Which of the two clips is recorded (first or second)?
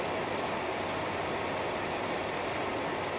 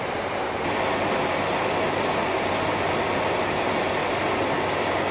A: second